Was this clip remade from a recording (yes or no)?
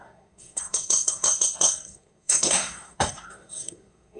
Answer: yes